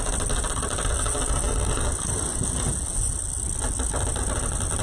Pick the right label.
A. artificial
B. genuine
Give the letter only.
B